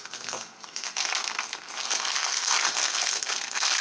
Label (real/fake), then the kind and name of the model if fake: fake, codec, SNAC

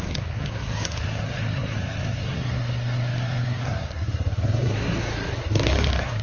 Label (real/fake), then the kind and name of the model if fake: fake, codec, SNAC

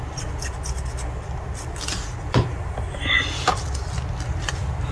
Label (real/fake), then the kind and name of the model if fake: real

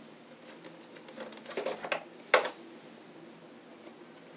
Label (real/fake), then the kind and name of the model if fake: real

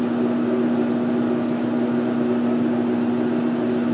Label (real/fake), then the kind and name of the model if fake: real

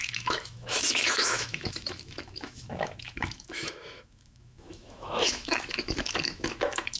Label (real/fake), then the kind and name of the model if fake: fake, autoencoder, DAC-VAE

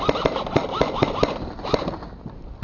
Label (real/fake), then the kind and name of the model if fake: real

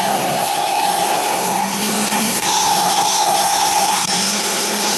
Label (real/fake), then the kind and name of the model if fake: fake, codec, SNAC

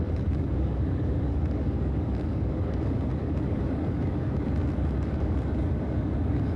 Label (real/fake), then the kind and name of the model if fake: fake, codec, DAC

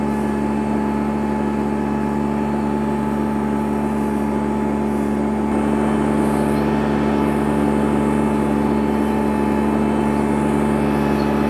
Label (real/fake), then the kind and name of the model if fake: real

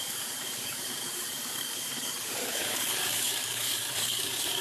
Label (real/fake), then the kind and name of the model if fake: fake, codec, DAC